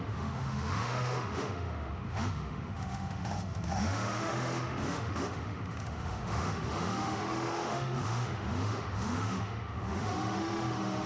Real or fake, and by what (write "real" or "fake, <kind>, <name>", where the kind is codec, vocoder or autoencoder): fake, autoencoder, DAC-VAE